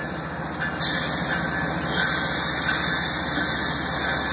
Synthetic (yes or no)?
no